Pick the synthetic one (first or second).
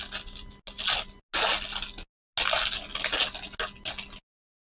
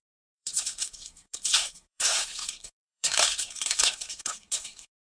second